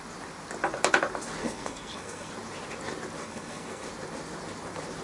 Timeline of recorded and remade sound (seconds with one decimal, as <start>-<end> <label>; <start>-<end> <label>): 0.0-1.4 recorded; 1.4-2.3 remade; 2.3-3.2 recorded; 3.2-3.9 remade; 3.9-5.0 recorded